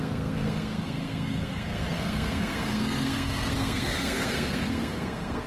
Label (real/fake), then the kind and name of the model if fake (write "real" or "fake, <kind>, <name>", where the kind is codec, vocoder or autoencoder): fake, codec, SNAC